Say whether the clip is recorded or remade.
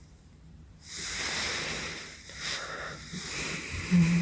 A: remade